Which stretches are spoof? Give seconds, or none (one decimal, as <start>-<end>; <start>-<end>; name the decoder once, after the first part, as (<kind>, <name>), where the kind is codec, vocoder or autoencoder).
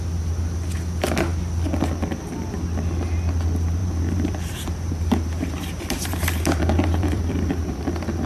3.8-7.8 (vocoder, BigVGAN v2)